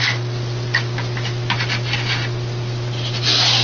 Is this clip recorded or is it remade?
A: recorded